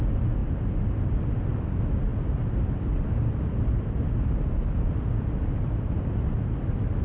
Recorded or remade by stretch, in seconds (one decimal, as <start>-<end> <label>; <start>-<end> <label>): 0.0-0.4 remade; 0.4-1.0 recorded; 1.0-7.0 remade